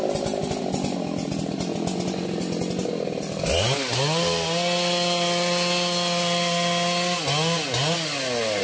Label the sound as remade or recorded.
recorded